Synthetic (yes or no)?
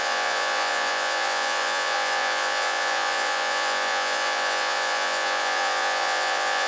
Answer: yes